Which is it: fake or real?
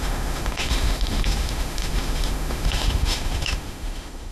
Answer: fake